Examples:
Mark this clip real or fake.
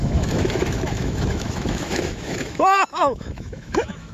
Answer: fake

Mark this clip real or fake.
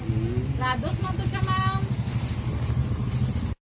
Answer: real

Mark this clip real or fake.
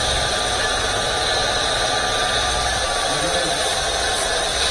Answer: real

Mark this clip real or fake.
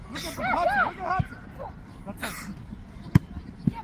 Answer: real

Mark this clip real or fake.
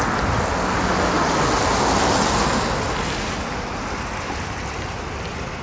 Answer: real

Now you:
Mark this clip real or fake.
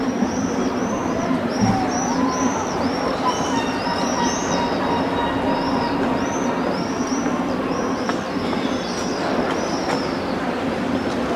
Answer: real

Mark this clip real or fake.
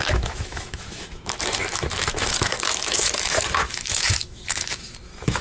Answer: fake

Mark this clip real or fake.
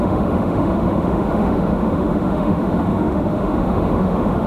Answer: fake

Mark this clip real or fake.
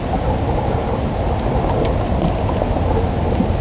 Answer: real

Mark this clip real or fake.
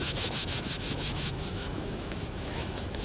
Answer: fake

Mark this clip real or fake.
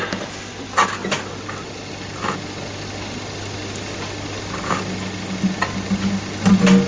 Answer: real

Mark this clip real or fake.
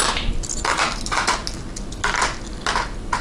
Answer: real